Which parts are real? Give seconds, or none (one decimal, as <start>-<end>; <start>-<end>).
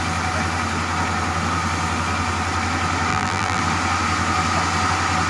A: 0.0-3.1; 3.6-5.3